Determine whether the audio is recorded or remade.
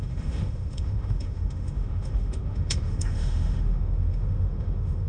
remade